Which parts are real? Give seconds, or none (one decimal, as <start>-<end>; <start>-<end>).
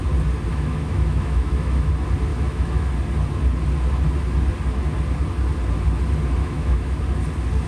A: 0.0-0.5; 1.9-2.3; 2.9-6.4; 7.0-7.7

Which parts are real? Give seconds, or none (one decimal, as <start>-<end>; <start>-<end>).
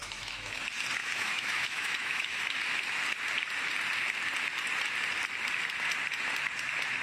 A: 0.6-1.0; 2.4-7.0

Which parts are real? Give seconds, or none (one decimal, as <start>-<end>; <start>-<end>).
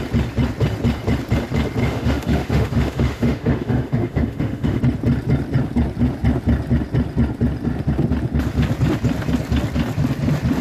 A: 0.0-1.8; 4.8-10.6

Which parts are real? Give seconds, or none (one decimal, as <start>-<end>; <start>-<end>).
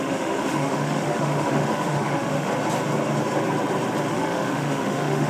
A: 2.5-4.1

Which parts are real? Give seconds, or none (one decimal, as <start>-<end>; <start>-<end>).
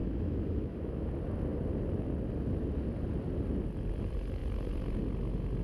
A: 1.1-5.6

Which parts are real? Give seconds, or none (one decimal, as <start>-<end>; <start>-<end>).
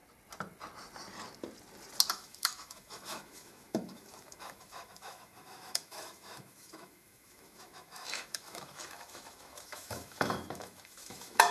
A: 0.0-2.1